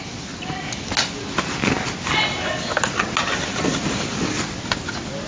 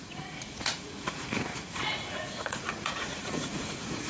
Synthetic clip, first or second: second